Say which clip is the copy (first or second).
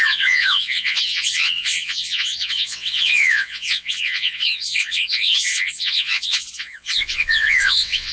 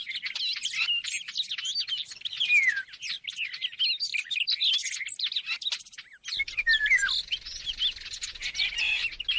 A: first